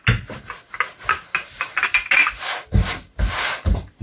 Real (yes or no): yes